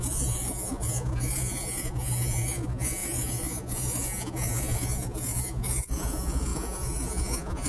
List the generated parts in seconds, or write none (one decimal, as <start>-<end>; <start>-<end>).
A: 0.0-7.7